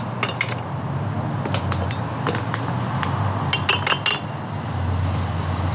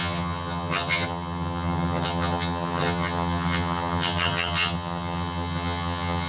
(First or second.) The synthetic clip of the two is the second